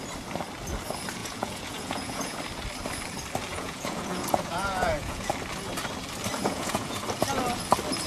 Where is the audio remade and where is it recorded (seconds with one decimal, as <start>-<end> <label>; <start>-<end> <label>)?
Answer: 0.0-1.2 recorded; 1.2-2.4 remade; 2.4-3.5 recorded; 3.5-5.3 remade; 5.3-6.4 recorded; 6.4-7.0 remade; 7.0-8.1 recorded